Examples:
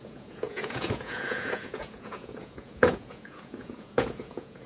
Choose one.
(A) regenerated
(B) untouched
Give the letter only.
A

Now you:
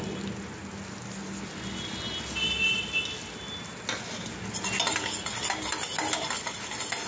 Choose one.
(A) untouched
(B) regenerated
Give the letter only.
A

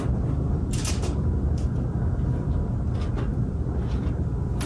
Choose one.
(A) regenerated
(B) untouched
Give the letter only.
B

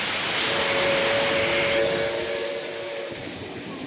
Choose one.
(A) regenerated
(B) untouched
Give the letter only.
B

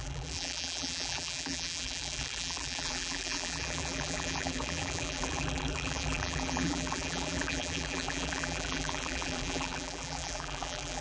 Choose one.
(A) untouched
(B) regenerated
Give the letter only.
B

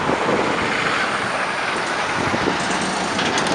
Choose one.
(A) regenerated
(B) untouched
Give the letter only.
B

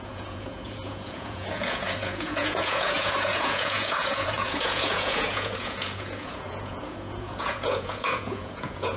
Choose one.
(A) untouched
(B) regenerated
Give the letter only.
B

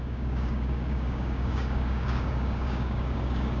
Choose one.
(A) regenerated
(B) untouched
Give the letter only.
A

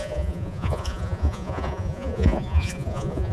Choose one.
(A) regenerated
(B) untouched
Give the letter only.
A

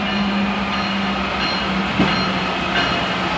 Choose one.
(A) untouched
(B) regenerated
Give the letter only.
A